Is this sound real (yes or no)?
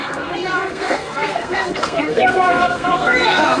no